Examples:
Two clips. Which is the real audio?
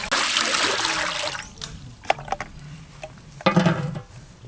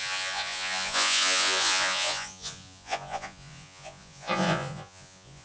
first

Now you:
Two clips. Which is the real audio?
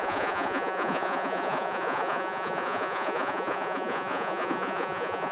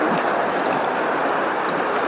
second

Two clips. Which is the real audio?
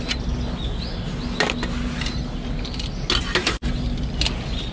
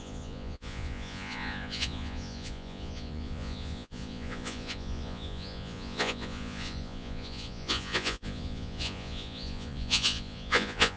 first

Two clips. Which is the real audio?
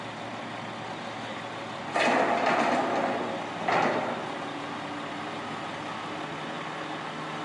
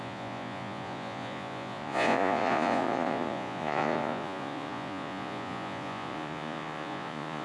first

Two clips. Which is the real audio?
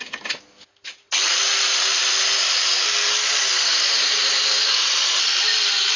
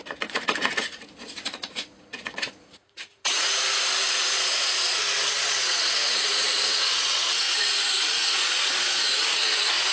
first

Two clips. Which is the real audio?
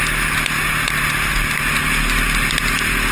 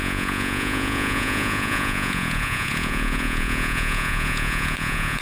first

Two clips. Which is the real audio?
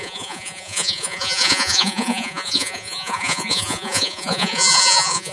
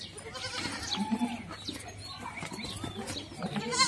second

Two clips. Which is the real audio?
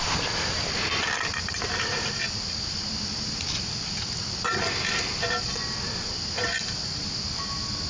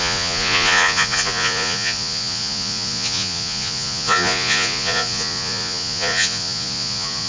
first